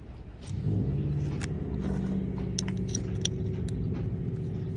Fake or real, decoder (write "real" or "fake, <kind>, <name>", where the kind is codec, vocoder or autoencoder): real